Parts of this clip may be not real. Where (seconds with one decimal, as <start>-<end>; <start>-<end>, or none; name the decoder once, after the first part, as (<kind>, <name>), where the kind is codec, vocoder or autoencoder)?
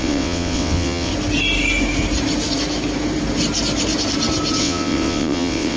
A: 0.0-1.1 (vocoder, WaveNeXt); 4.6-5.8